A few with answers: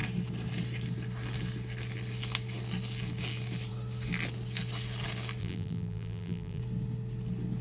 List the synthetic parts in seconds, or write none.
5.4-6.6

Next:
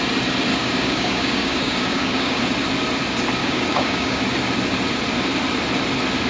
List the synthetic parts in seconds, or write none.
0.5-2.4; 3.4-4.2

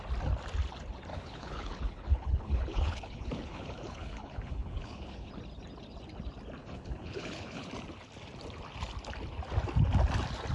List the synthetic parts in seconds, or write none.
1.1-5.3; 6.6-7.7